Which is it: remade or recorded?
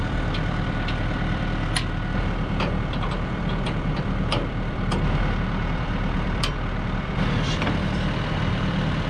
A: remade